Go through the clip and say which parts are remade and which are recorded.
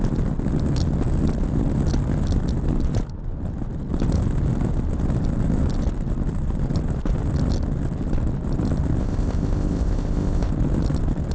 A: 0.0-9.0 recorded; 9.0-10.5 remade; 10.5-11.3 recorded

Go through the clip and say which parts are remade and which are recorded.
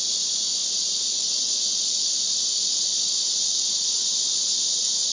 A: 0.0-0.6 remade; 0.6-1.9 recorded; 1.9-5.1 remade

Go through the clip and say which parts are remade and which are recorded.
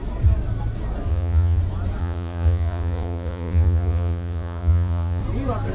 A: 0.0-1.1 recorded; 1.1-1.6 remade; 1.6-2.0 recorded; 2.0-5.2 remade; 5.2-5.7 recorded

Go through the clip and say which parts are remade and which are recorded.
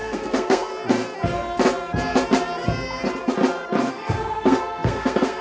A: 0.0-0.7 remade; 0.7-3.9 recorded; 3.9-5.4 remade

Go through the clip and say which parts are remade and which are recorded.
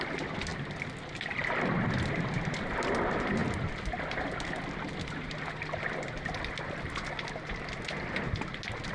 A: 0.0-8.9 recorded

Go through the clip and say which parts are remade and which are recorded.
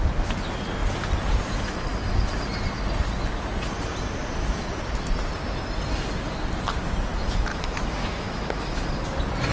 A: 0.0-7.5 recorded; 7.5-8.8 remade; 8.8-9.5 recorded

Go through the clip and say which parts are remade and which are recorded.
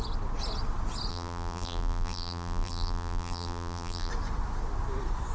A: 0.0-1.1 recorded; 1.1-4.1 remade; 4.1-5.3 recorded